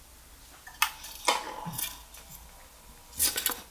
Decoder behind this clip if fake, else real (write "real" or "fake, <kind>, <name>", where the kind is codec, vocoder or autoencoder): real